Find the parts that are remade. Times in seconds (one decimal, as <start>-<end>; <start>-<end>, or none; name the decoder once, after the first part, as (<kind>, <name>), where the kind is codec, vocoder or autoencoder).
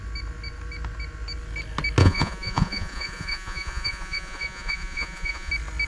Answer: 2.0-5.5 (vocoder, Vocos)